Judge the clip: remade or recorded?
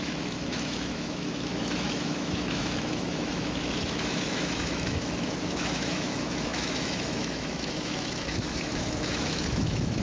remade